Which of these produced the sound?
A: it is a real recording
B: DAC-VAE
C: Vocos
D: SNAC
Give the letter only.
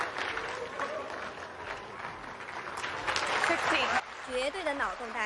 A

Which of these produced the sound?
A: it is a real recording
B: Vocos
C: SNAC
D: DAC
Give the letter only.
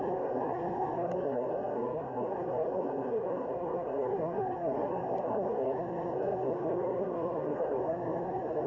C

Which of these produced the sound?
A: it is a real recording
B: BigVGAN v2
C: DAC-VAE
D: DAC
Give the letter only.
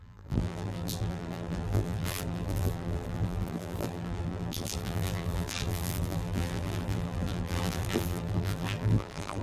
B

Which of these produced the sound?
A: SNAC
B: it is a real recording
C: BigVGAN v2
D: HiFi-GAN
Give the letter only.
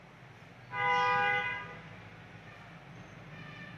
B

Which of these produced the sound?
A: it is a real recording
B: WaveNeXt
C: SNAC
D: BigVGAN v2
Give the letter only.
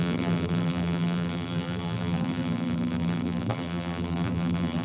D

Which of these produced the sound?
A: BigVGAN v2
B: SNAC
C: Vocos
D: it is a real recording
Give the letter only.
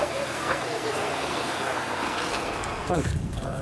B